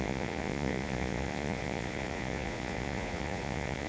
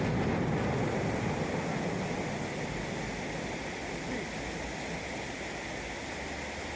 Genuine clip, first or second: second